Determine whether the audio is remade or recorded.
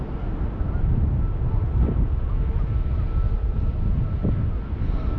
recorded